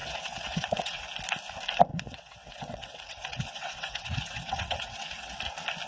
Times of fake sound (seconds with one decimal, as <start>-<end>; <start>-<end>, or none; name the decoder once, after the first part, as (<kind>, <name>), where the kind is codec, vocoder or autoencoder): 0.0-1.0 (vocoder, WaveNeXt); 1.9-5.4